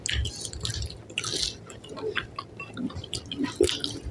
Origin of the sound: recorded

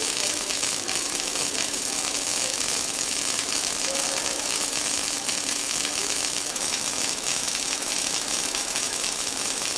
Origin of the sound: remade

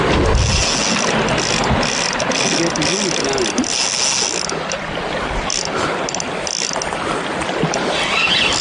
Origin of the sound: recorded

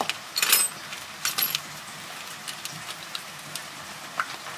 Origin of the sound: recorded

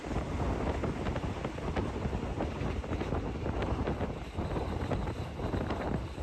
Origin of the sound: recorded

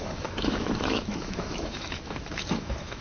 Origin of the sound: remade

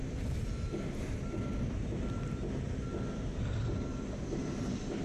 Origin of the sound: recorded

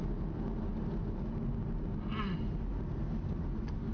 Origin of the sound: recorded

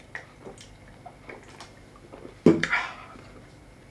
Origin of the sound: recorded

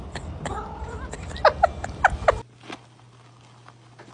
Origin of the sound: recorded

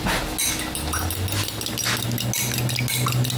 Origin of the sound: recorded